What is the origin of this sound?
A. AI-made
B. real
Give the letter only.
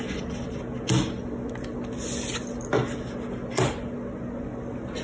B